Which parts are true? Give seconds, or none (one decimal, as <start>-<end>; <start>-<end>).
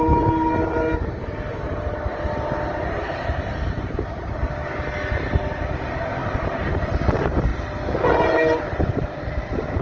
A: 2.1-2.7; 4.6-5.8; 6.2-7.1; 7.5-8.0